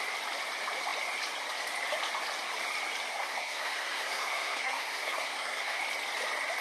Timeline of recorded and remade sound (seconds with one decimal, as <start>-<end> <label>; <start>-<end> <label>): 0.0-3.1 recorded; 3.1-5.8 remade; 5.8-6.6 recorded